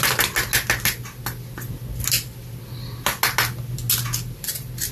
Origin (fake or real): real